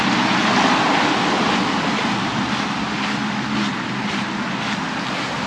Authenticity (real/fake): real